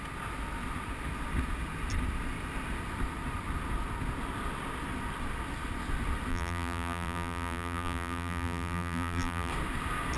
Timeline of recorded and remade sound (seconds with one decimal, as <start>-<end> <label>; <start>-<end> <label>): 0.0-6.3 recorded; 6.3-9.5 remade; 9.5-10.2 recorded